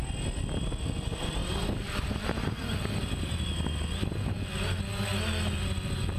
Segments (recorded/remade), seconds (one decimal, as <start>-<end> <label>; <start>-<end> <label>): 0.0-6.2 recorded